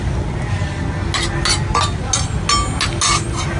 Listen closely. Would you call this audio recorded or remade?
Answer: recorded